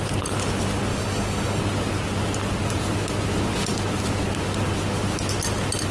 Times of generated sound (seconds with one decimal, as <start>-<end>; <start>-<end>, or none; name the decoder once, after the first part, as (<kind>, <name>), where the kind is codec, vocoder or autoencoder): 0.9-1.6 (codec, DAC)

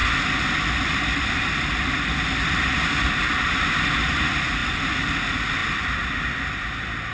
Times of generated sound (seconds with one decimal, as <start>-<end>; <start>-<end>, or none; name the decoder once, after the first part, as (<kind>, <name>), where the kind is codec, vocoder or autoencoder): none

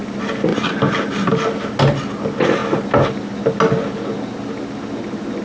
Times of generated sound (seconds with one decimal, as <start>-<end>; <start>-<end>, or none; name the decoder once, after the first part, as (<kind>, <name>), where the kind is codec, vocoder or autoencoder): none